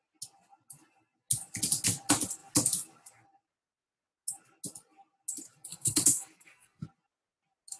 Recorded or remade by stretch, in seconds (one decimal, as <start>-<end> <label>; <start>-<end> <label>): 0.0-5.7 recorded; 5.7-6.8 remade; 6.8-7.8 recorded